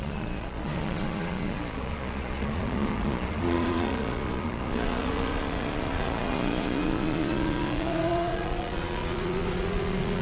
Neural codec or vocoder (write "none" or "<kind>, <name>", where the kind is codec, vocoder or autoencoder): vocoder, Vocos